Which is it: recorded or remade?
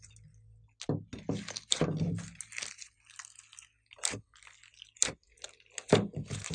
recorded